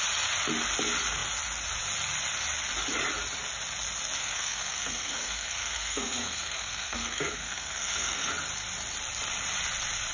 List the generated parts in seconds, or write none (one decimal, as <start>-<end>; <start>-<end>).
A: 4.2-8.3